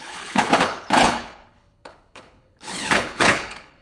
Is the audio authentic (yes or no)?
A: no